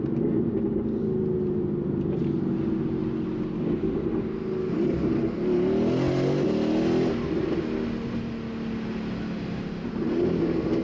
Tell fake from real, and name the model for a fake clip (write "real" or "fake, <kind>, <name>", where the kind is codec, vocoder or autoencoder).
real